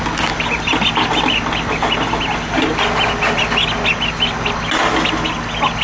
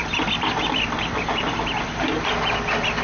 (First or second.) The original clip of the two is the first